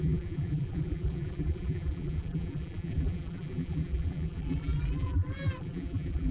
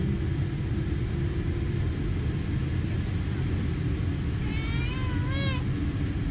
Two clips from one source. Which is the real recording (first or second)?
second